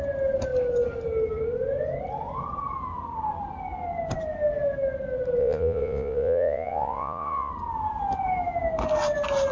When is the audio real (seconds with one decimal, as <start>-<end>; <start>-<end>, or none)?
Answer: 0.0-5.4; 7.5-9.5